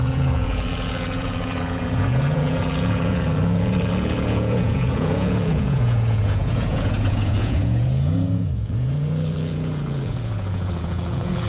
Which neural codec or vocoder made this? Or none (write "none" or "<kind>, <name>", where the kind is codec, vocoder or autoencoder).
vocoder, Vocos